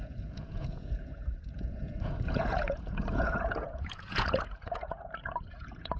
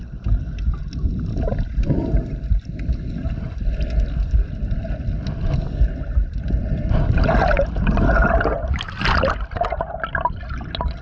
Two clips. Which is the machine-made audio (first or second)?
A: first